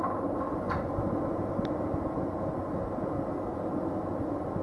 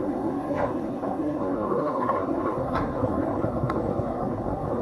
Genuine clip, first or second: first